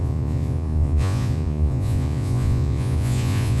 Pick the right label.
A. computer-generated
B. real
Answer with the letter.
A